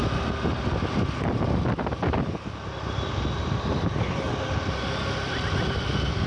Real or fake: real